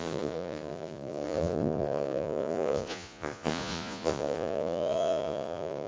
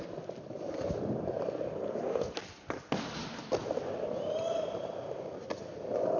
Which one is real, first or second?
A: second